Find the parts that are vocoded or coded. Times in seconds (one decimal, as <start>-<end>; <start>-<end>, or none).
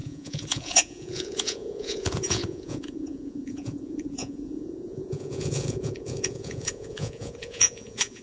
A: 0.0-8.2